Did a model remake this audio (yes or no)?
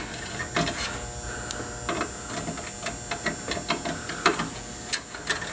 no